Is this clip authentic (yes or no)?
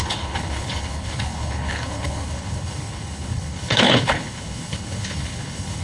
no